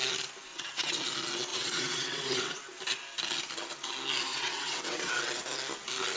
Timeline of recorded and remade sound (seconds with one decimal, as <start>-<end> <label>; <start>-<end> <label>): 0.0-0.5 recorded; 0.5-1.0 remade; 1.0-1.5 recorded; 1.5-2.6 remade; 2.6-4.3 recorded; 4.3-5.1 remade; 5.1-6.2 recorded